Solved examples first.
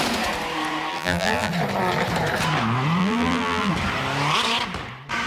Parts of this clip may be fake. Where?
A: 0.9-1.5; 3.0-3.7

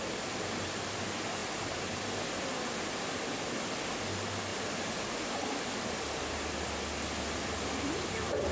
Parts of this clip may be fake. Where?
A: 1.4-2.0